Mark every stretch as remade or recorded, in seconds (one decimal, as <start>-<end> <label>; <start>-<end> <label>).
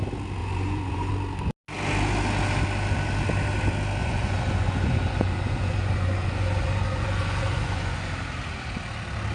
0.0-0.4 recorded; 0.4-1.1 remade; 1.1-4.0 recorded; 4.0-8.1 remade; 8.1-9.3 recorded